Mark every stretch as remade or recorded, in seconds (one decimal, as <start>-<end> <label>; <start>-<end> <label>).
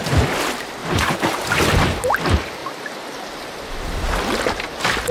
0.0-0.8 recorded; 0.8-1.4 remade; 1.4-2.6 recorded; 2.6-3.7 remade; 3.7-5.1 recorded